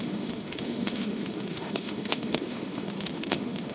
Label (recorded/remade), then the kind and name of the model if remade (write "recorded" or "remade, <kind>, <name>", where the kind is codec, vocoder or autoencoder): remade, autoencoder, DAC-VAE